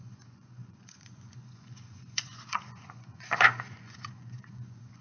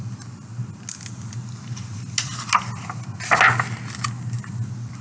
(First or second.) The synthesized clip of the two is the first